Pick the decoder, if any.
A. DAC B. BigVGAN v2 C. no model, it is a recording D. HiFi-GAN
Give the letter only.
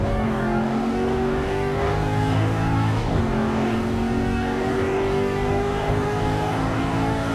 A